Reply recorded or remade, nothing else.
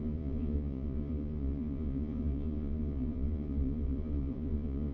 remade